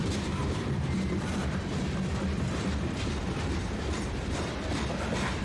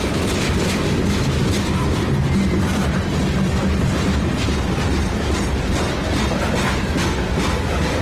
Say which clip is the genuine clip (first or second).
second